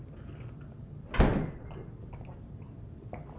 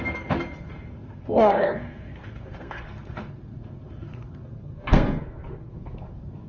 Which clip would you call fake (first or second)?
second